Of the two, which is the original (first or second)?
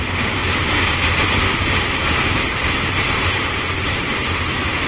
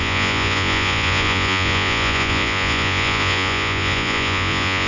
first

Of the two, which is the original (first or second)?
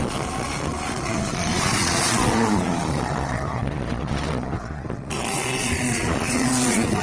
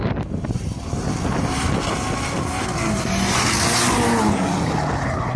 second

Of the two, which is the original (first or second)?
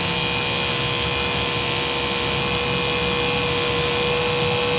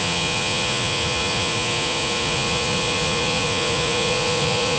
first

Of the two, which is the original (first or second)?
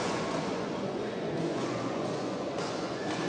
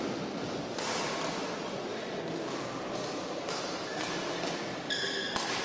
second